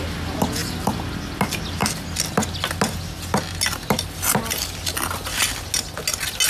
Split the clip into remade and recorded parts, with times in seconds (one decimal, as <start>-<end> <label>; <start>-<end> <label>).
0.0-6.5 recorded